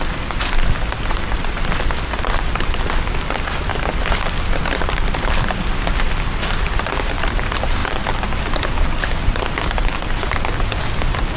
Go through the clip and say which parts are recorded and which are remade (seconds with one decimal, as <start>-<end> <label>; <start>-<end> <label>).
0.0-3.7 remade; 3.7-4.6 recorded; 4.6-11.4 remade